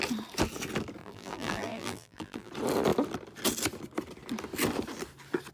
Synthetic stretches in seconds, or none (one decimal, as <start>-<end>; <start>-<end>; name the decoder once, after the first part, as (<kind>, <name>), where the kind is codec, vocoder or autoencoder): 1.0-2.5 (vocoder, BigVGAN v2)